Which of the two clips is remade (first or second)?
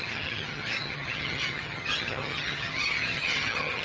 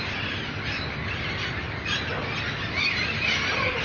first